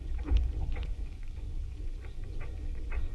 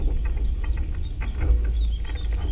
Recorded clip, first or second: second